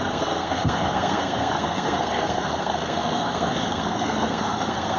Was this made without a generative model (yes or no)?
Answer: no